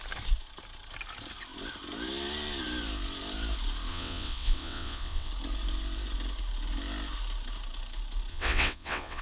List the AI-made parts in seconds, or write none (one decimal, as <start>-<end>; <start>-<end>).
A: 3.9-5.3; 8.3-9.2